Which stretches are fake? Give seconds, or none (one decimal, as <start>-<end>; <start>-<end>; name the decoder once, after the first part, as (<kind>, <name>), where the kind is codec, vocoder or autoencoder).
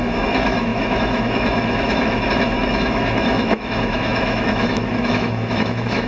0.0-6.1 (autoencoder, DAC-VAE)